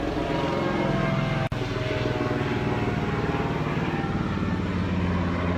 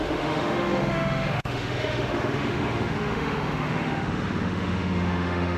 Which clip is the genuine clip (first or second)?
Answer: first